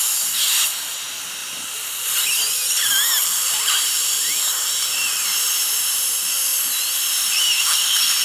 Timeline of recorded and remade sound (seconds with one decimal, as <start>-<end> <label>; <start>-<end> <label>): 0.0-1.4 recorded; 1.4-5.4 remade; 5.4-8.2 recorded

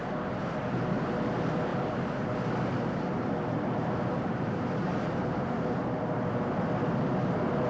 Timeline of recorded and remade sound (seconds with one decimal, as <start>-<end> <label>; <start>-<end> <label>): 0.0-1.7 recorded; 1.7-5.8 remade; 5.8-7.7 recorded

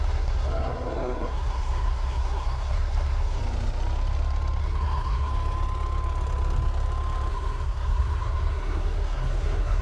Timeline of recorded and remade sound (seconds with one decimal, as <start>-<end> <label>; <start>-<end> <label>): 0.0-3.4 remade; 3.4-4.6 recorded; 4.6-5.3 remade; 5.3-7.3 recorded; 7.3-9.8 remade